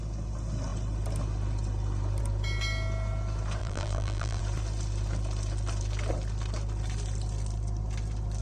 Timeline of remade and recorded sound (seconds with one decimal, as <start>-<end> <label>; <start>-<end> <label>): 0.0-3.6 recorded; 3.6-4.4 remade; 4.4-8.4 recorded